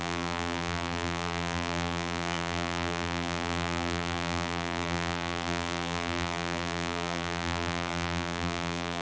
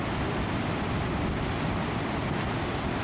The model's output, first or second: first